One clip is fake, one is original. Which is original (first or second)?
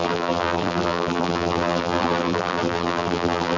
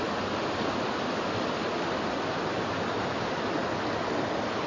second